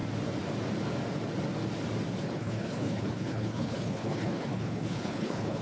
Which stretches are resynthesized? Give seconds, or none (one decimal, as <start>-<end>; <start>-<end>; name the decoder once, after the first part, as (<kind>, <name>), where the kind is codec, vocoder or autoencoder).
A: 2.2-5.6 (codec, HILCodec)